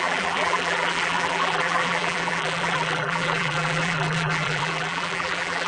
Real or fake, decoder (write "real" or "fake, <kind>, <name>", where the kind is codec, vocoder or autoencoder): fake, vocoder, BigVGAN v2